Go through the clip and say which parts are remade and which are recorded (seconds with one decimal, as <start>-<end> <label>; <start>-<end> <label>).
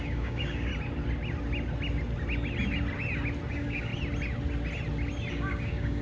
0.0-0.7 remade; 0.7-3.5 recorded; 3.5-3.9 remade; 3.9-5.3 recorded; 5.3-6.0 remade